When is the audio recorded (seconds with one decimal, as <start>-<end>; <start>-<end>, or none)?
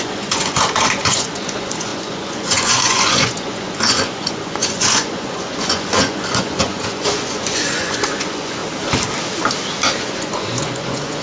8.6-10.0